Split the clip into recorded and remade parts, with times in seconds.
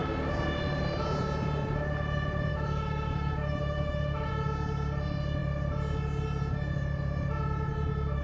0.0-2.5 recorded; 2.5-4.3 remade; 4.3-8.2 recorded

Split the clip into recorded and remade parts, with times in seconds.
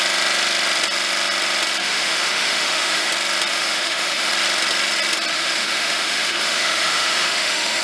0.0-1.8 recorded; 1.8-3.1 remade; 3.1-3.5 recorded; 3.5-4.3 remade; 4.3-5.3 recorded; 5.3-7.8 remade